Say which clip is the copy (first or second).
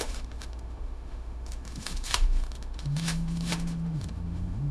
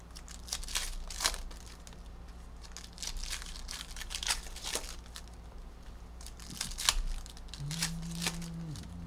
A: first